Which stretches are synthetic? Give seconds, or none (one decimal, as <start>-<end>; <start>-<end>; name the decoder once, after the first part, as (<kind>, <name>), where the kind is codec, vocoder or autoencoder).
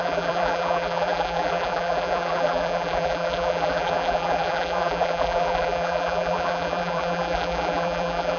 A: 0.0-8.4 (vocoder, BigVGAN v2)